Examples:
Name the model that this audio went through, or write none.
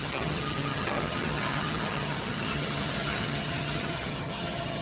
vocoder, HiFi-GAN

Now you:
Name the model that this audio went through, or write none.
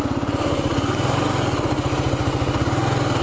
none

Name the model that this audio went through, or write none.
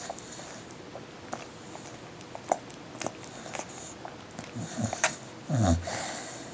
none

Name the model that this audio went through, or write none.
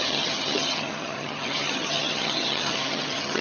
vocoder, HiFi-GAN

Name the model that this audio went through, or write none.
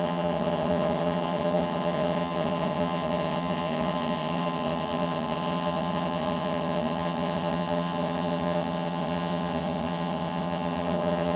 vocoder, HiFi-GAN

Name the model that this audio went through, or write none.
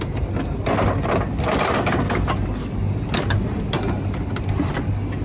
none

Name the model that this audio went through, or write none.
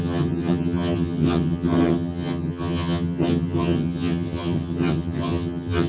vocoder, HiFi-GAN